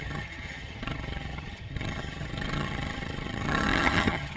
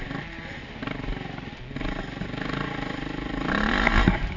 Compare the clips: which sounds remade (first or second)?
first